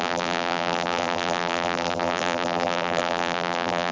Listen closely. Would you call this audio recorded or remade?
remade